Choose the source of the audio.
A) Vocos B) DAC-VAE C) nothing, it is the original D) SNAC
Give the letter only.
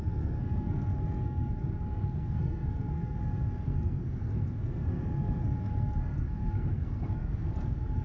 D